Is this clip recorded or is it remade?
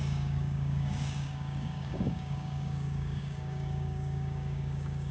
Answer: remade